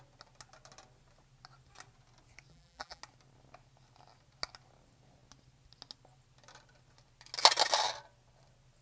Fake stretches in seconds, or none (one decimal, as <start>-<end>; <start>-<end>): 2.5-3.0